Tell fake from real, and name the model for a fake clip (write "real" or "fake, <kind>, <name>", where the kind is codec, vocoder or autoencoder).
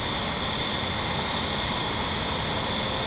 real